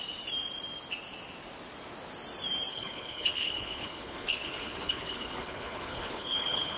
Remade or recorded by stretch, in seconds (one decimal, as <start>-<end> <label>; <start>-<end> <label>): 0.0-2.7 recorded; 2.7-6.8 remade